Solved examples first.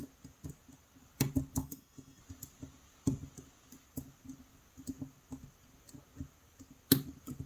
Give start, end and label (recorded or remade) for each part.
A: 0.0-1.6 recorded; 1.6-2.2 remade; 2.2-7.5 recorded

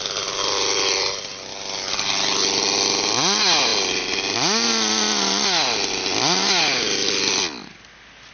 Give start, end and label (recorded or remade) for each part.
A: 0.0-8.3 recorded

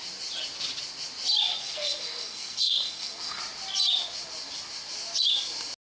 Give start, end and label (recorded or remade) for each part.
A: 0.0-1.5 recorded; 1.5-3.4 remade; 3.4-5.9 recorded

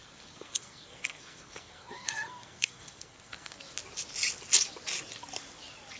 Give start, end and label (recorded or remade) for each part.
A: 0.0-3.6 remade; 3.6-6.0 recorded

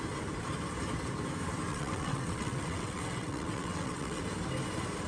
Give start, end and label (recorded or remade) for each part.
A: 0.0-1.7 recorded; 1.7-4.2 remade; 4.2-5.1 recorded

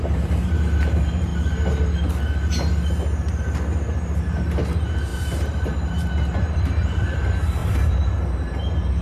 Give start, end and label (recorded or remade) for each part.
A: 0.0-1.3 remade; 1.3-4.2 recorded; 4.2-9.0 remade

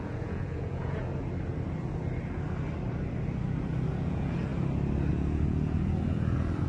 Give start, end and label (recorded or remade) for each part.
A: 0.0-1.1 remade; 1.1-3.9 recorded; 3.9-4.5 remade; 4.5-5.1 recorded; 5.1-6.7 remade